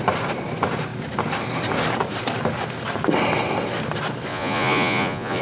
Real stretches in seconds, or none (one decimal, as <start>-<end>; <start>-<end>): 0.0-4.3